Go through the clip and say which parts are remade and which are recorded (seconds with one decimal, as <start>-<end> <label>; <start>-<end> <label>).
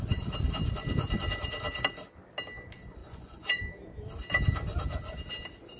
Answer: 0.0-3.0 recorded; 3.0-3.6 remade; 3.6-5.8 recorded